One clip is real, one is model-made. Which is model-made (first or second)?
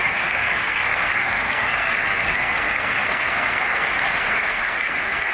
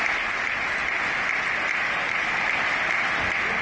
first